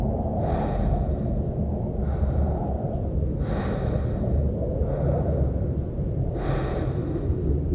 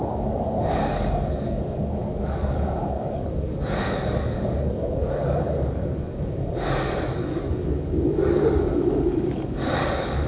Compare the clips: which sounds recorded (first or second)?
first